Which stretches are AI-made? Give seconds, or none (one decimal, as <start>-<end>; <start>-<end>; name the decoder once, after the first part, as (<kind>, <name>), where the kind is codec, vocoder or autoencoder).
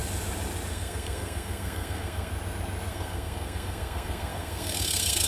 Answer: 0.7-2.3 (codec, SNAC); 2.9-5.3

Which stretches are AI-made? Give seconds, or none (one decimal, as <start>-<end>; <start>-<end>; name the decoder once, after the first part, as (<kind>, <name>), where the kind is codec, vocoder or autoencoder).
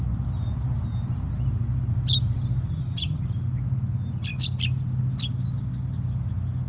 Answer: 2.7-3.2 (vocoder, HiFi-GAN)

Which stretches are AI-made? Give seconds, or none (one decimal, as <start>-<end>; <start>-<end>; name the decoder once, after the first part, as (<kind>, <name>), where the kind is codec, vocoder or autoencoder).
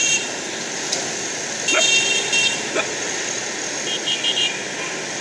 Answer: 2.0-5.2 (vocoder, BigVGAN v2)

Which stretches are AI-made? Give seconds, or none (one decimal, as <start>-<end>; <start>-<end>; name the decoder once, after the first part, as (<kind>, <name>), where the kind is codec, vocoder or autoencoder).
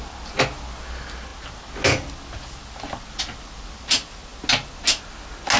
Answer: none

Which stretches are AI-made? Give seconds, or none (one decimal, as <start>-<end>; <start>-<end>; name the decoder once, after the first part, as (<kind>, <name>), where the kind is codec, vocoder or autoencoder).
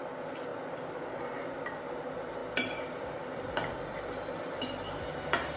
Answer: 2.4-5.6 (vocoder, BigVGAN v2)